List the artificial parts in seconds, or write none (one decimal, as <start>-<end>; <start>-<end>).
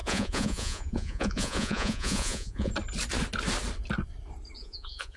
0.0-2.7; 4.6-5.2